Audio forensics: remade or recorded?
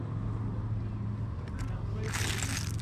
recorded